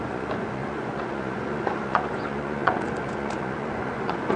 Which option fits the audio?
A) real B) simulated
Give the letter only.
B